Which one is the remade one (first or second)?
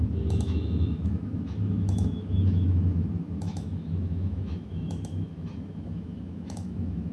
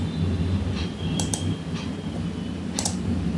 first